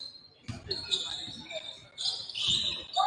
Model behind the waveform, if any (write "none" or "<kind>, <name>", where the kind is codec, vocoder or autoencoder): none